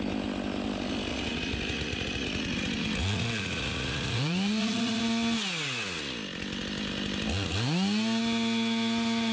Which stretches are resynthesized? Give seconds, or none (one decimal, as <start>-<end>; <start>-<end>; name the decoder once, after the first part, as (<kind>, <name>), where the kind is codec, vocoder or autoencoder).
1.1-5.0 (vocoder, Vocos)